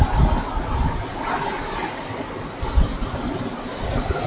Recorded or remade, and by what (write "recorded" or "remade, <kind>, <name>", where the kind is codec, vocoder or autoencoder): recorded